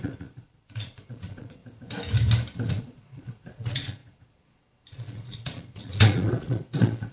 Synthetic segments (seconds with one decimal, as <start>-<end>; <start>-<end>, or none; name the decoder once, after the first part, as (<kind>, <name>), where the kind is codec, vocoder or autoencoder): 0.0-1.6 (vocoder, Vocos); 2.7-7.1